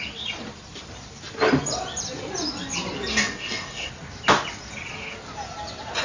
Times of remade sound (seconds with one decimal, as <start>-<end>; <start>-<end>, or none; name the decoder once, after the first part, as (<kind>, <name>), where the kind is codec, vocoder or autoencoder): 3.1-3.9 (codec, DAC)